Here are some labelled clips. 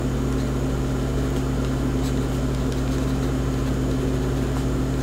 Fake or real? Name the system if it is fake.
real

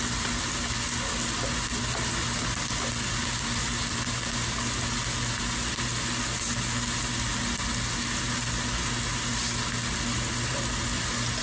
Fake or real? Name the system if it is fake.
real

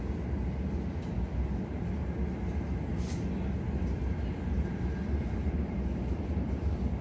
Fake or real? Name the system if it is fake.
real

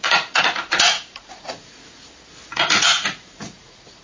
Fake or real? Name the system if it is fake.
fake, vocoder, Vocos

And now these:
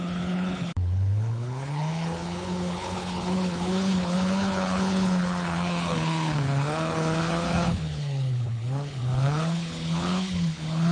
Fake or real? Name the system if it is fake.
fake, codec, HILCodec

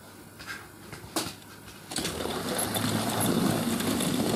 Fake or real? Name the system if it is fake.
real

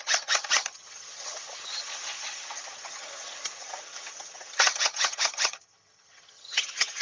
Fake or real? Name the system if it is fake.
fake, vocoder, HiFi-GAN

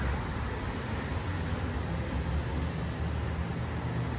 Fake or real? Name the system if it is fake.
real